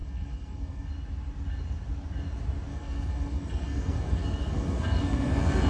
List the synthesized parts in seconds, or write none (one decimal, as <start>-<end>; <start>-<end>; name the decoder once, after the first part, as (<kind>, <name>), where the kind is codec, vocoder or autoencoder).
0.0-0.9 (codec, SNAC); 2.7-5.7